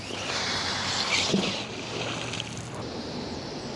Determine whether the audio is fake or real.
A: real